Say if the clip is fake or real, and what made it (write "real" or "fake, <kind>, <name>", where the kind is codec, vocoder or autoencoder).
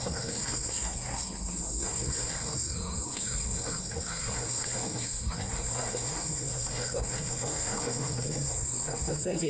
fake, codec, SNAC